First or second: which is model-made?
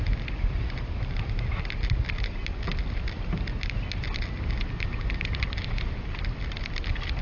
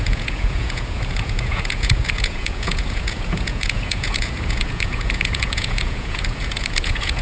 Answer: second